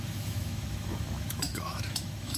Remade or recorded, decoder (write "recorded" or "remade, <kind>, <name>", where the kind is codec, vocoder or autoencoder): remade, autoencoder, DAC-VAE